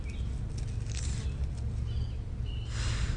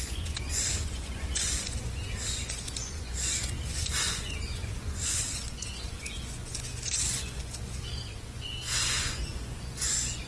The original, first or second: first